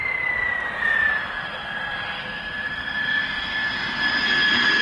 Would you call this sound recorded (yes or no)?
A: yes